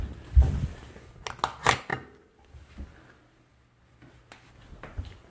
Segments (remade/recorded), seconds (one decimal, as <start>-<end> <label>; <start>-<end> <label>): 0.0-5.3 recorded